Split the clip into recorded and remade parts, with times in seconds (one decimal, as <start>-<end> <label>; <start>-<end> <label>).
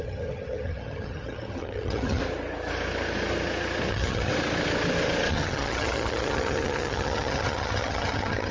0.0-2.2 remade; 2.2-3.9 recorded; 3.9-4.3 remade; 4.3-5.3 recorded; 5.3-8.5 remade